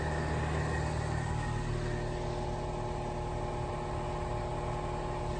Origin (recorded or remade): recorded